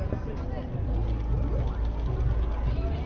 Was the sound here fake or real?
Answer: real